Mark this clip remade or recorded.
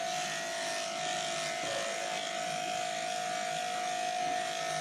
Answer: recorded